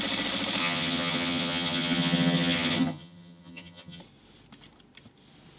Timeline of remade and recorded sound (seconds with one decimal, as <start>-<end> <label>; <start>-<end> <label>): 0.0-0.6 recorded; 0.6-4.0 remade; 4.0-5.6 recorded